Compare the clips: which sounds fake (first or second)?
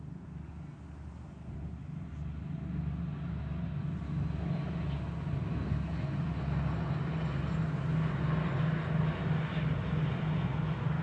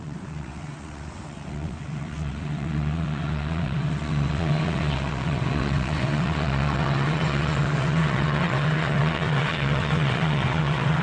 second